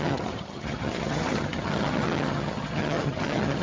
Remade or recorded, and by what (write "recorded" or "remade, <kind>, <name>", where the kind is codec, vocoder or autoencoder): remade, vocoder, HiFi-GAN